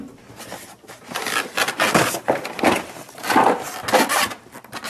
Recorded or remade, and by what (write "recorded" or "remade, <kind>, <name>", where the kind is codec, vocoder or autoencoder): recorded